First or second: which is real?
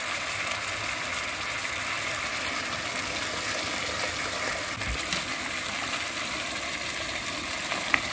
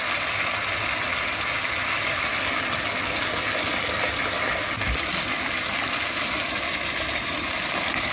second